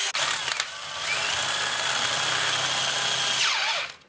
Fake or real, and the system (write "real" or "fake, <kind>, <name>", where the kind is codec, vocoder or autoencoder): real